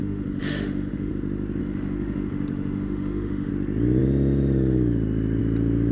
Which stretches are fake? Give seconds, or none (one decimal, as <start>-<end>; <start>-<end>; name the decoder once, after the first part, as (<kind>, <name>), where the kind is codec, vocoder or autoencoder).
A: 0.0-1.1 (autoencoder, DAC-VAE); 1.6-3.5